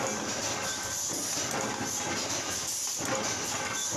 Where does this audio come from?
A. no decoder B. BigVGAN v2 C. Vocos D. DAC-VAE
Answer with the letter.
A